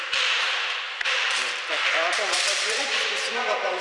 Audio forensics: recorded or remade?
remade